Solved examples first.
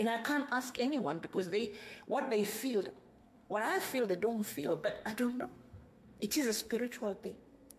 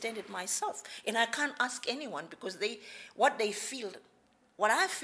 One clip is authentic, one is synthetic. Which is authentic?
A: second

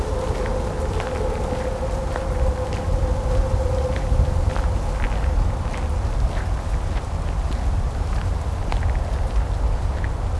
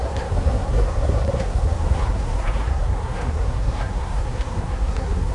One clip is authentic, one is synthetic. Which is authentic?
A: first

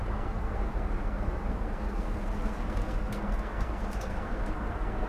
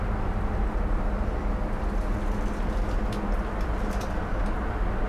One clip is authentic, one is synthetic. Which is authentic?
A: second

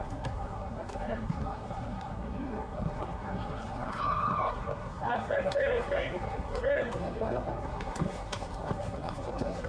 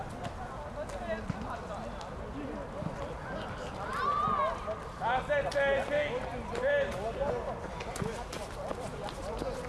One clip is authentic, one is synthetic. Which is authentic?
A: second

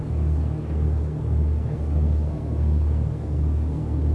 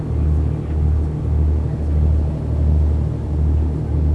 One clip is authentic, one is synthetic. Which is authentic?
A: second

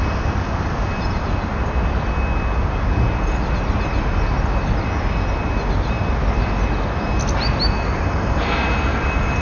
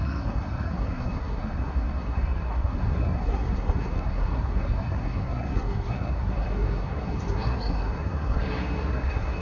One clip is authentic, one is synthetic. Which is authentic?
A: first